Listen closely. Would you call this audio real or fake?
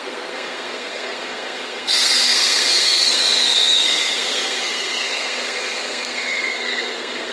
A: fake